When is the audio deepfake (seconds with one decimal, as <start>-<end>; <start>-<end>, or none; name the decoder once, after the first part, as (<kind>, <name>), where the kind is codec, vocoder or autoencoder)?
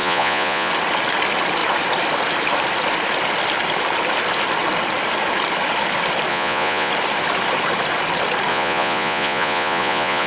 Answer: 0.0-0.7 (vocoder, Vocos); 6.3-6.9; 8.5-10.3